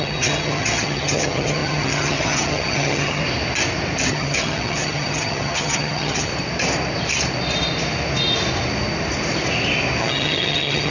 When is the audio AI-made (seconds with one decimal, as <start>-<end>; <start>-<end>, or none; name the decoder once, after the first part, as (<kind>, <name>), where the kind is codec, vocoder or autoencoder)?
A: 0.0-3.2 (vocoder, HiFi-GAN); 4.1-6.3; 10.0-10.9